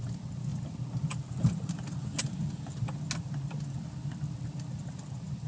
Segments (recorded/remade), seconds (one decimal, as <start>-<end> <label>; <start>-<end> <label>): 0.0-5.5 recorded